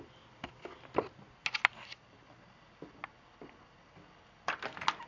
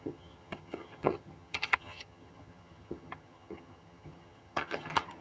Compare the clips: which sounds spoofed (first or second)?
second